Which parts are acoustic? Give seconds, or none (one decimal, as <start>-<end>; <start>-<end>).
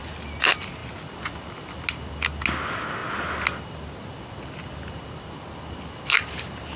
0.0-6.8